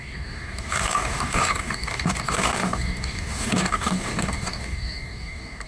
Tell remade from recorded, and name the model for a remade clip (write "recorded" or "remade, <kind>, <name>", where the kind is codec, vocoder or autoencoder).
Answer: remade, codec, DAC